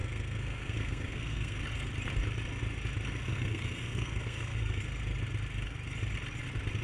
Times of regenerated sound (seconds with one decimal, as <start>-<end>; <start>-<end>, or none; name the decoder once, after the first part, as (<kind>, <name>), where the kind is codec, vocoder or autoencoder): 0.0-1.6 (codec, SNAC); 3.3-4.8